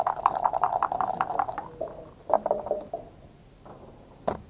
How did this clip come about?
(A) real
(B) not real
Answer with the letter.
A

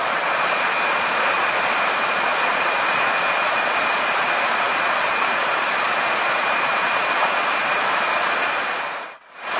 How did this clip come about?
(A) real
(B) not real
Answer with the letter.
B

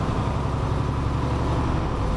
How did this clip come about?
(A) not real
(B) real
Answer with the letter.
B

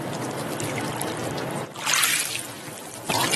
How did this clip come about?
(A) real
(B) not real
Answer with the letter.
B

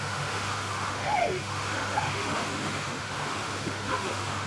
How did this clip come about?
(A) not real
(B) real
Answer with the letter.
A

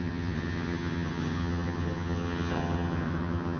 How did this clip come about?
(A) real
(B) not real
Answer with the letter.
B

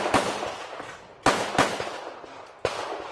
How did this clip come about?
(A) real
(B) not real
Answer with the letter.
A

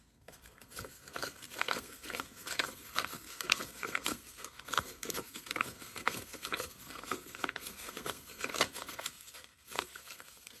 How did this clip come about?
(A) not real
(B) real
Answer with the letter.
A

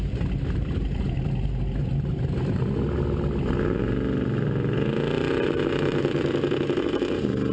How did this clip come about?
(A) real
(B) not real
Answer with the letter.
A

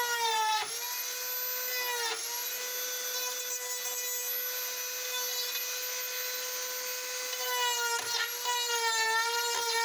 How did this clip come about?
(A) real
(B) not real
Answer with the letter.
A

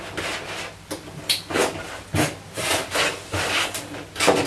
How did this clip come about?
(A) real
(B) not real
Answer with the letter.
A